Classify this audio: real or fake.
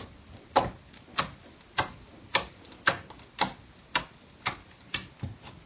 real